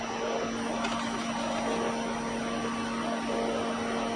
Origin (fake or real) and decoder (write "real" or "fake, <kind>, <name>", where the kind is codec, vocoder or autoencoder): real